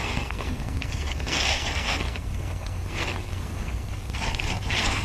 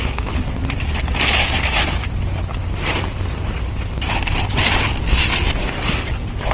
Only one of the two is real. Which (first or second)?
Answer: second